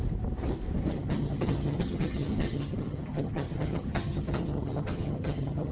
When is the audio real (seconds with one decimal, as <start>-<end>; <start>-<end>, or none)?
0.0-0.9

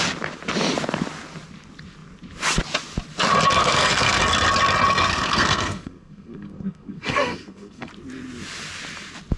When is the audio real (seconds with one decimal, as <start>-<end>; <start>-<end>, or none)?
0.0-3.6; 4.2-5.1; 7.9-9.4